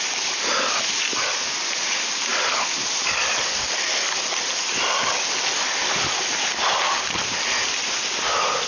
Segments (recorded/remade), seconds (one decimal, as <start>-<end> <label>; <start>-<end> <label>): 0.0-8.7 recorded